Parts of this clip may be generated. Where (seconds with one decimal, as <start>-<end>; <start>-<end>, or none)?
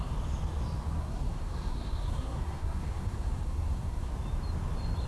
1.0-4.1